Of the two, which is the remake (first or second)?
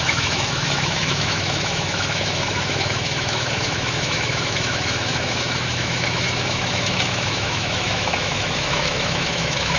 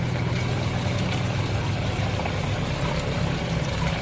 first